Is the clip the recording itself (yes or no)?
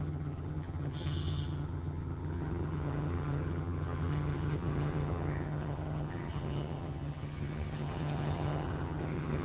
no